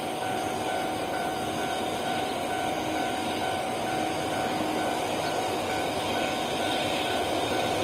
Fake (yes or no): no